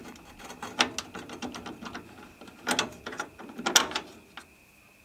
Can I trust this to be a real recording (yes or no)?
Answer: yes